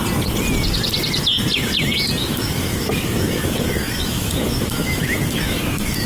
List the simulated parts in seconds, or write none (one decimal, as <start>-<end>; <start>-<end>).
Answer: 2.2-6.1